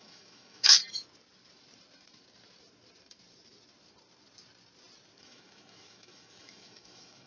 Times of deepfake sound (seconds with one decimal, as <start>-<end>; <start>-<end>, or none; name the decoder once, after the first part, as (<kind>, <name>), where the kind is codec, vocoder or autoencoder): 0.0-0.8 (autoencoder, DAC-VAE); 5.2-7.3

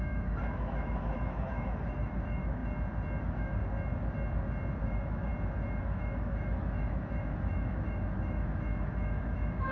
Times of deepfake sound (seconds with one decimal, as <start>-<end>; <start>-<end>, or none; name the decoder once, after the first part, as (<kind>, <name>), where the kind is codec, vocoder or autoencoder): 0.0-2.6 (autoencoder, DAC-VAE); 3.2-3.6; 4.8-5.3; 5.8-9.7

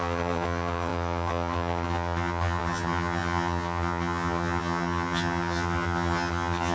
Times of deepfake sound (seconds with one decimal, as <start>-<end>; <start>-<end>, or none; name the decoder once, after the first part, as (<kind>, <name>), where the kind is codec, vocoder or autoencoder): 0.0-6.7 (vocoder, HiFi-GAN)

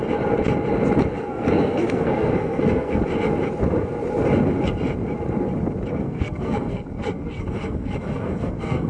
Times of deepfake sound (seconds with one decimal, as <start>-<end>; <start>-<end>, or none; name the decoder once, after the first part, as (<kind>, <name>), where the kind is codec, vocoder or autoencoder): 1.1-3.0 (codec, SNAC); 6.0-8.9

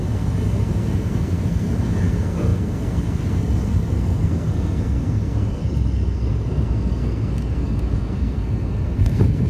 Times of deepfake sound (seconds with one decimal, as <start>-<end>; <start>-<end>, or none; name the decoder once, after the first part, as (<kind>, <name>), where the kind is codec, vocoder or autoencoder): 0.0-9.5 (codec, SNAC)

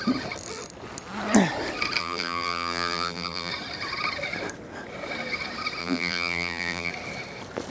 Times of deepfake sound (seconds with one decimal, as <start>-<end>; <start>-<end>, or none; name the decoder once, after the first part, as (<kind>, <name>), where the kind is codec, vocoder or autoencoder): 2.0-3.5 (vocoder, BigVGAN v2); 5.8-6.9